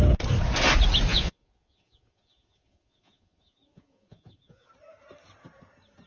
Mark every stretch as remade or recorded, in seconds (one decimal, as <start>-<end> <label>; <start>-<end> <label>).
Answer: 0.0-1.1 recorded; 1.1-4.7 remade; 4.7-6.1 recorded